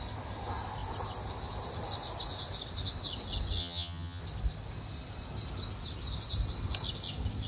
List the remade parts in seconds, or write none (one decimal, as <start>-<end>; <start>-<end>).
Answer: 3.6-4.2